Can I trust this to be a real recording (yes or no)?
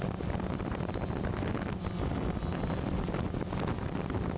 yes